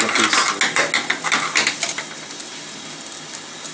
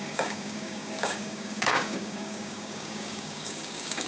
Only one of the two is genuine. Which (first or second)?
first